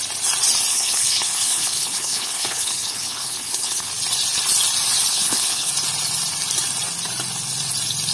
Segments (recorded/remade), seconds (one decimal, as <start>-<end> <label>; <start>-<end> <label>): 0.0-0.7 recorded; 0.7-3.9 remade; 3.9-5.1 recorded; 5.1-5.7 remade; 5.7-8.1 recorded